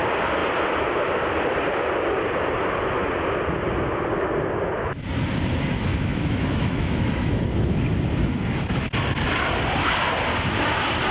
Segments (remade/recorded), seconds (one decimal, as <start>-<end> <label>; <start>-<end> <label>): 0.0-5.9 recorded; 5.9-7.4 remade; 7.4-11.1 recorded